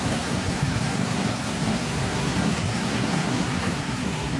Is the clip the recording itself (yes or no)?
no